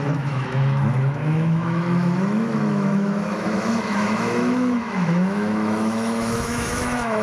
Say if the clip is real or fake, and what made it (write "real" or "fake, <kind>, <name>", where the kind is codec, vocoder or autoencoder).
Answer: fake, autoencoder, DAC-VAE